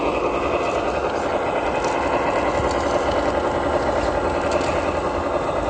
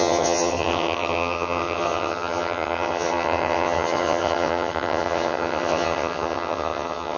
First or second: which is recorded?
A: first